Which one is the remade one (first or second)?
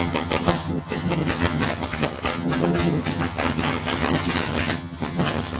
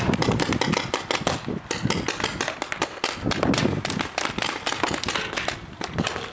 first